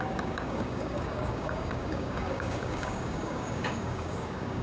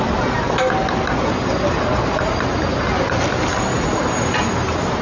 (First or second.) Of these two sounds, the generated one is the first